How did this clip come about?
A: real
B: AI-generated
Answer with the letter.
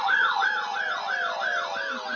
A